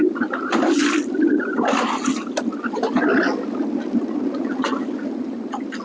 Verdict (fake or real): real